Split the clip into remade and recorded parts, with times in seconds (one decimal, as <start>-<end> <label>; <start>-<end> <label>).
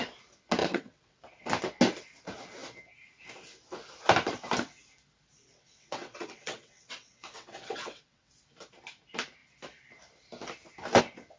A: 0.0-0.6 recorded; 0.6-1.2 remade; 1.2-5.4 recorded; 5.4-8.4 remade; 8.4-11.4 recorded